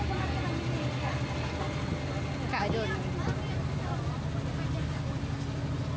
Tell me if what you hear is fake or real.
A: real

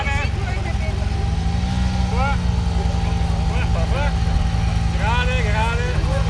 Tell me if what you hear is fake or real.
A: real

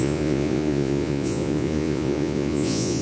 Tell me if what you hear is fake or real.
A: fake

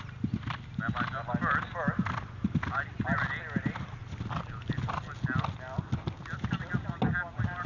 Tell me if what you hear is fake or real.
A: real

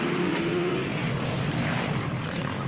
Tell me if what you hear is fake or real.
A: real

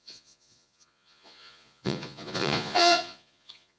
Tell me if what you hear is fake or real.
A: fake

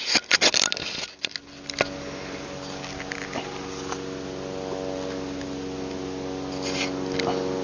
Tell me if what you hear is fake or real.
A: real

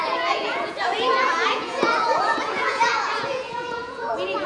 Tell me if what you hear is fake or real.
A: fake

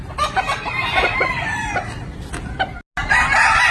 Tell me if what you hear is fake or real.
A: real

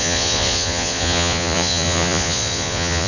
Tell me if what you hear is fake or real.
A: fake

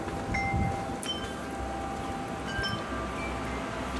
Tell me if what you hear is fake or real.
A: real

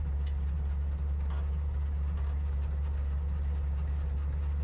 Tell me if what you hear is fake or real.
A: real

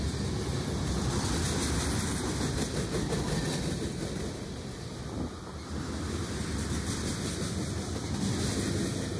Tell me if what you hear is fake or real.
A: real